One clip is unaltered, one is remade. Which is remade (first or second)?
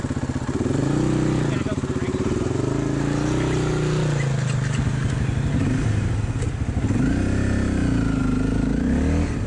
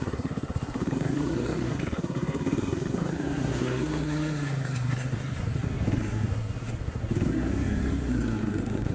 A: second